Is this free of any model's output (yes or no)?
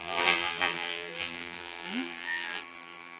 no